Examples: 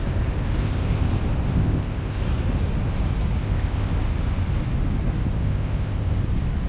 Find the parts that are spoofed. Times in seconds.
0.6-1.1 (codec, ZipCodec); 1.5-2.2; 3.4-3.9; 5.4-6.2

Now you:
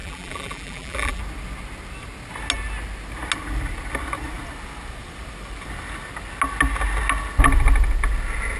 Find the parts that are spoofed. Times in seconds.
0.0-1.2 (vocoder, BigVGAN v2)

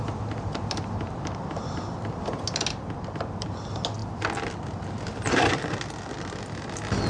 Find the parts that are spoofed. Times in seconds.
none

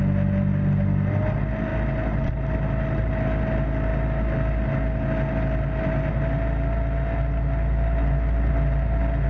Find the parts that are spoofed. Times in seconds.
none

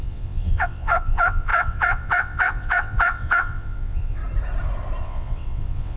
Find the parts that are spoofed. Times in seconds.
0.0-4.2 (vocoder, WaveNeXt); 5.0-6.0

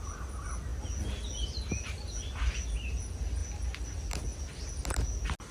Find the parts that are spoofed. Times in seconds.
none

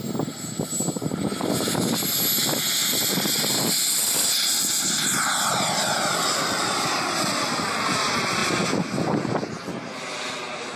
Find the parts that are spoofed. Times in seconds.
none

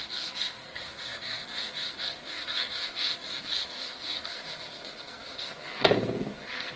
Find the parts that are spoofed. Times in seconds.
0.0-6.8 (codec, SNAC)